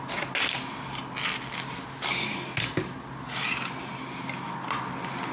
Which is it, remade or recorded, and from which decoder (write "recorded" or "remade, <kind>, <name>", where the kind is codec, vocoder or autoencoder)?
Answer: recorded